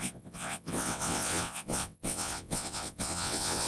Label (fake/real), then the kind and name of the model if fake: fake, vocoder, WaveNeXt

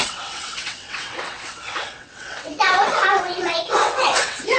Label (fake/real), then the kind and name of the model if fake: fake, vocoder, WaveNeXt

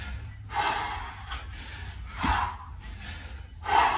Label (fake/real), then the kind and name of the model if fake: real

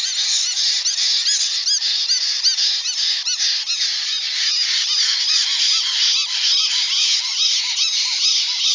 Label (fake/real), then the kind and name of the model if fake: real